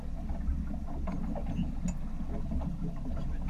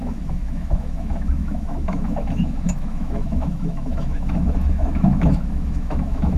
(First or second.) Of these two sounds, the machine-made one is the second